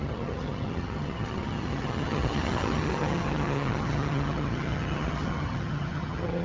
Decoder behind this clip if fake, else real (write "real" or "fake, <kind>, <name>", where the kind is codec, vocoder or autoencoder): fake, vocoder, HiFi-GAN